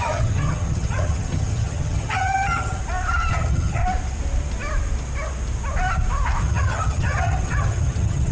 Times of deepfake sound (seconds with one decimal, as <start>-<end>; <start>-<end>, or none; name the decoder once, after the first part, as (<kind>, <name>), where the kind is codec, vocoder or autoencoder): 0.0-2.8 (vocoder, HiFi-GAN); 3.3-3.8; 6.4-8.3